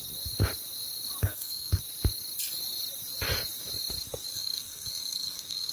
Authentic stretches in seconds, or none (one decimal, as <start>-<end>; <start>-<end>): 0.0-1.2; 1.8-4.3